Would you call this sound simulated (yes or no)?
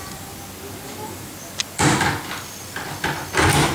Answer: no